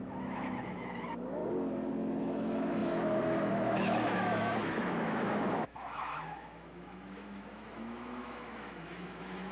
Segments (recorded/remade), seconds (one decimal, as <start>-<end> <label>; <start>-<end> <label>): 0.0-1.4 remade; 1.4-2.2 recorded; 2.2-9.5 remade